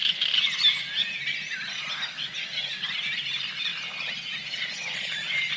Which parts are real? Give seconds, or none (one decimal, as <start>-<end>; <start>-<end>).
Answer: 0.0-1.7; 3.7-4.5